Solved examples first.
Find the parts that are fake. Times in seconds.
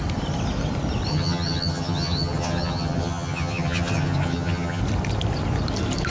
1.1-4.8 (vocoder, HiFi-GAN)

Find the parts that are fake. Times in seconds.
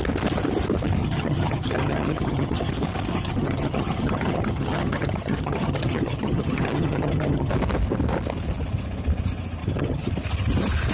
1.0-2.7 (vocoder, HiFi-GAN); 3.1-7.5; 9.6-10.1